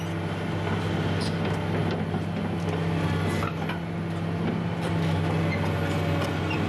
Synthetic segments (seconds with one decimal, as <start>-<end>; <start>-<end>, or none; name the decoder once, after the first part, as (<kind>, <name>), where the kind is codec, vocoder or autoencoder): none